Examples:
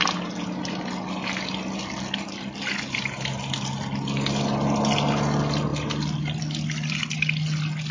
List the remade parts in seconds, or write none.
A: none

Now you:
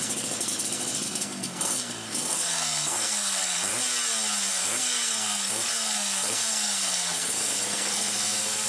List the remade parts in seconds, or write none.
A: 0.0-3.7; 4.5-8.7

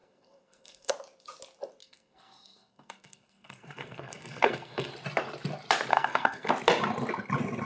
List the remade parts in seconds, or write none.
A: 0.0-0.9; 1.8-4.9; 5.9-6.5

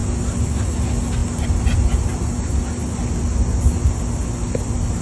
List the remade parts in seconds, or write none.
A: none

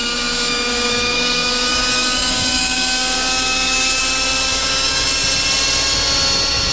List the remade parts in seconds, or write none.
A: 0.0-4.0; 4.5-5.1

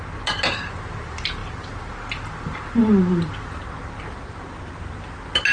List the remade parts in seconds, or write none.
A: none